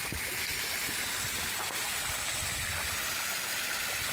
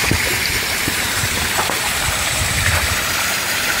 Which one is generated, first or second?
second